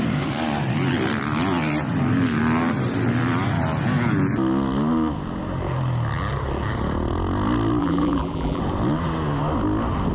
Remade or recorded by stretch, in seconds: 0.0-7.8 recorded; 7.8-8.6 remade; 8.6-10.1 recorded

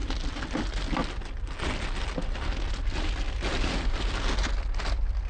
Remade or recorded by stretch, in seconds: 0.0-5.3 recorded

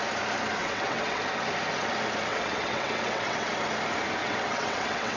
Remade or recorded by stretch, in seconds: 0.0-0.6 recorded; 0.6-1.2 remade; 1.2-2.3 recorded; 2.3-3.5 remade; 3.5-4.2 recorded; 4.2-5.2 remade

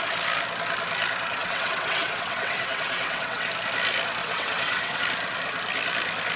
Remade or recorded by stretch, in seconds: 0.0-1.4 recorded; 1.4-3.5 remade; 3.5-4.2 recorded; 4.2-5.0 remade; 5.0-6.4 recorded

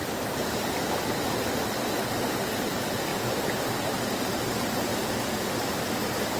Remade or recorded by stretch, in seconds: 0.0-0.7 remade; 0.7-3.1 recorded; 3.1-4.4 remade; 4.4-4.9 recorded; 4.9-6.0 remade; 6.0-6.4 recorded

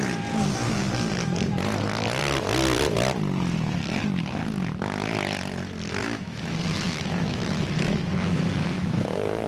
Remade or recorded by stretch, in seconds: 0.0-6.0 recorded; 6.0-9.5 remade

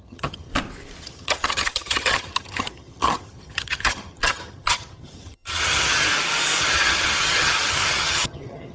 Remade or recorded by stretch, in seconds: 0.0-0.5 remade; 0.5-1.0 recorded; 1.0-6.1 remade; 6.1-6.6 recorded; 6.6-8.7 remade

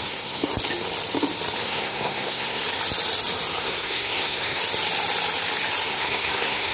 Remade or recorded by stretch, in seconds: 0.0-0.5 remade; 0.5-1.6 recorded; 1.6-2.6 remade; 2.6-3.6 recorded; 3.6-4.6 remade; 4.6-5.9 recorded; 5.9-6.7 remade